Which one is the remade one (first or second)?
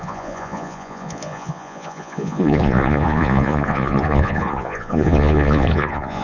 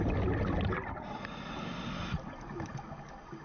first